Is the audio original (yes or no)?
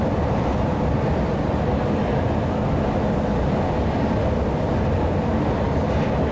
yes